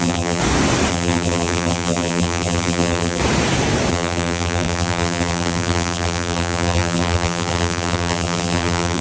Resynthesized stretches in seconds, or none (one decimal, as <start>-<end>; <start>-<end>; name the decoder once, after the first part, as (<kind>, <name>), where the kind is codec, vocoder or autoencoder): 0.0-0.4 (vocoder, BigVGAN v2); 0.9-3.2; 3.9-9.0